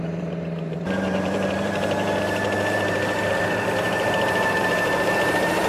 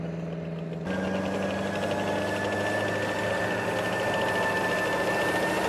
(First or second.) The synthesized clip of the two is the first